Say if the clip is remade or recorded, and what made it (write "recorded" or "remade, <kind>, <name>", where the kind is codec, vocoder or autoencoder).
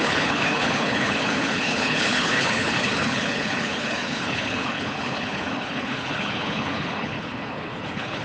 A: remade, codec, HILCodec